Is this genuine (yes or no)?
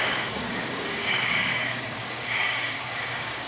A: no